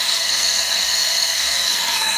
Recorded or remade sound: remade